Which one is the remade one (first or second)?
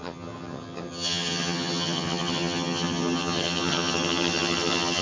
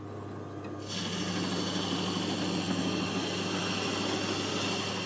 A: first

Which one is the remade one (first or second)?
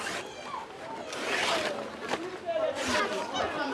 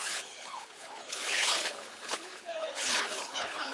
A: second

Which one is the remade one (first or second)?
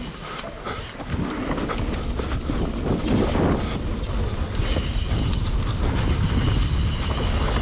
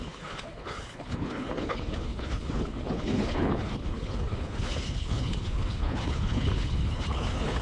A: second